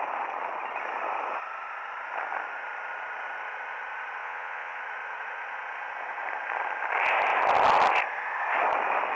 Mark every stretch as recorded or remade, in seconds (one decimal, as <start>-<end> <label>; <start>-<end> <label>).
0.0-4.2 recorded; 4.2-4.8 remade; 4.8-9.2 recorded

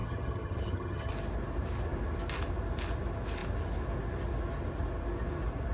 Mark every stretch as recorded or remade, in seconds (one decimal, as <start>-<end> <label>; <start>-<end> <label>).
0.0-1.1 remade; 1.1-5.7 recorded